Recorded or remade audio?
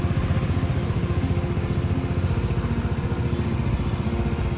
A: recorded